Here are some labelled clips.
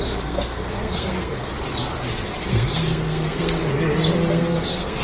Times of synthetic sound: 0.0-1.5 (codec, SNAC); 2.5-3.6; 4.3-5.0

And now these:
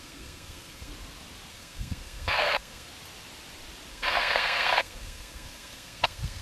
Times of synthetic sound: 0.0-0.9 (codec, SNAC); 1.5-2.9; 3.9-6.4

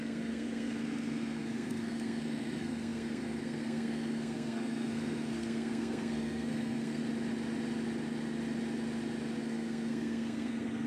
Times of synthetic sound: 0.0-7.0 (codec, SNAC); 9.4-10.9

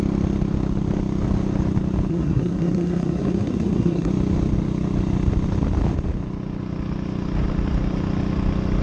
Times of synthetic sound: 2.1-4.1 (codec, SNAC)